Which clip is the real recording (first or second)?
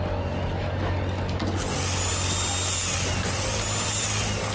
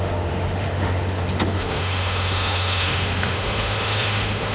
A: first